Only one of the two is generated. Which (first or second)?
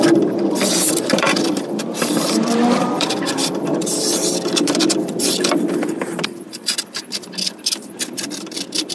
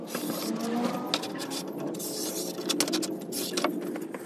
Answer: first